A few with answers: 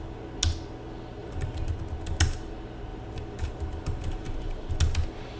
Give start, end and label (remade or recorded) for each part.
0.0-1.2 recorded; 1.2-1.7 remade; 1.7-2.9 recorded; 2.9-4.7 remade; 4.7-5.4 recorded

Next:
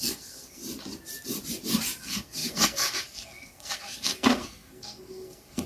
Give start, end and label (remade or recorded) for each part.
0.0-0.6 remade; 0.6-2.0 recorded; 2.0-5.7 remade

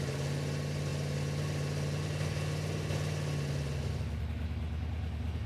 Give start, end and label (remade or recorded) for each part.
0.0-5.5 recorded

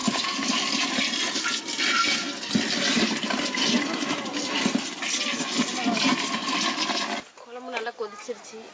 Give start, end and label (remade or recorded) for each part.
0.0-8.7 recorded

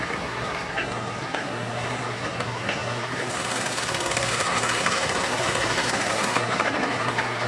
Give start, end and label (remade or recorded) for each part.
0.0-7.5 remade

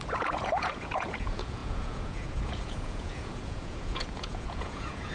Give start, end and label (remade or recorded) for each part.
0.0-5.1 remade